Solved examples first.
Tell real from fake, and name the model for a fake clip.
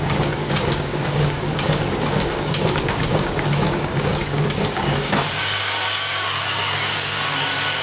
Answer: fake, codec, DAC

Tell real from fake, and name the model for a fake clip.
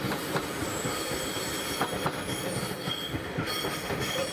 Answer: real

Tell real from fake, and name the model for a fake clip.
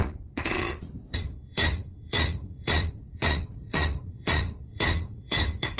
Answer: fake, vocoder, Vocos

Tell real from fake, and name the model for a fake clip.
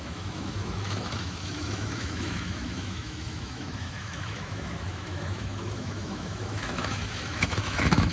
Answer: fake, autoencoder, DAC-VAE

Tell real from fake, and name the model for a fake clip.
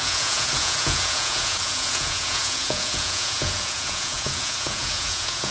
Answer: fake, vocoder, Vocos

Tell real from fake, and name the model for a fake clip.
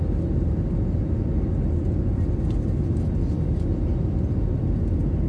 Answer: real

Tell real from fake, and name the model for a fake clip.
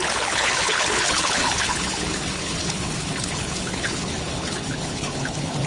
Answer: fake, codec, HILCodec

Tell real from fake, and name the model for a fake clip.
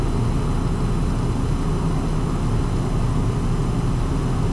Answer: real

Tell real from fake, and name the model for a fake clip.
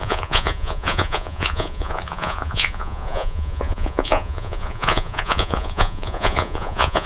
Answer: fake, vocoder, Vocos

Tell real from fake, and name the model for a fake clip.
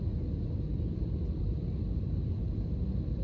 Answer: real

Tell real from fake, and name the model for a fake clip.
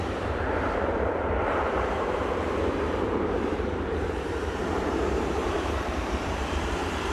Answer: fake, vocoder, BigVGAN v2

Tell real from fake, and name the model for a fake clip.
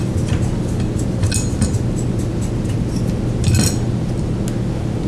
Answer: real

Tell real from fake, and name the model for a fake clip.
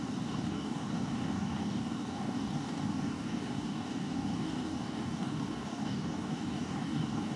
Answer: fake, codec, DAC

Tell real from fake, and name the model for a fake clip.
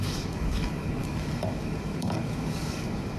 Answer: fake, codec, DAC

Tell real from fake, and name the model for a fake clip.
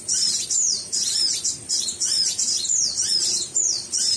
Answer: real